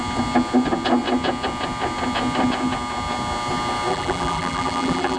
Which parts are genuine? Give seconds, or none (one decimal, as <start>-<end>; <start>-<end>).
0.0-3.9